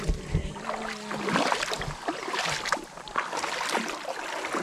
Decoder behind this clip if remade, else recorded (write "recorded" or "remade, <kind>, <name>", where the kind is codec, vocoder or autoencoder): recorded